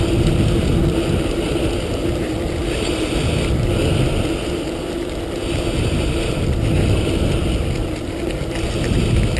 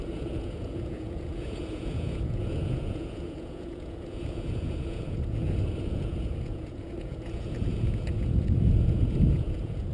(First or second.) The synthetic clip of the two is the second